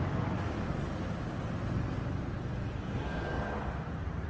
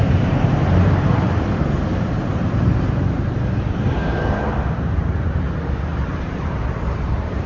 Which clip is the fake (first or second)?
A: second